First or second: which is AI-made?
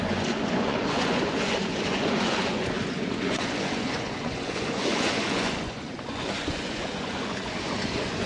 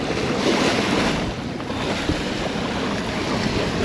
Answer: first